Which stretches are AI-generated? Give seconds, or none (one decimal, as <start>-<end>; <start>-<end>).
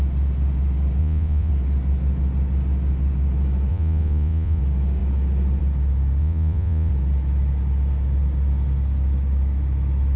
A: 1.0-1.5; 3.7-4.6; 6.2-6.9